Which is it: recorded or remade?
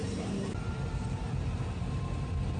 recorded